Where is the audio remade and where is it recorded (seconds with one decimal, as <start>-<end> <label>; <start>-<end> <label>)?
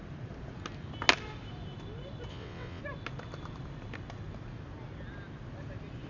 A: 0.0-2.3 recorded; 2.3-2.8 remade; 2.8-6.1 recorded